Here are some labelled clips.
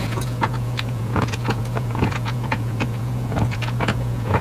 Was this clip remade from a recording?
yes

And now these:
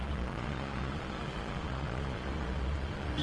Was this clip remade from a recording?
yes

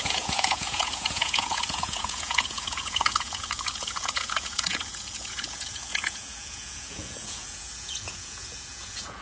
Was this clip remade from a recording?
yes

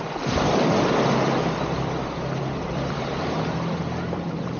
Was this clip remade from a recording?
yes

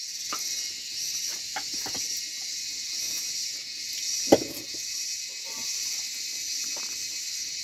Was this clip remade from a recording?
no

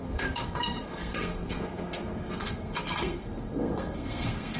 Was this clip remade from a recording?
yes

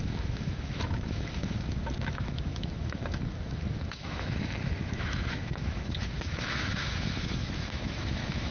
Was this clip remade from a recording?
yes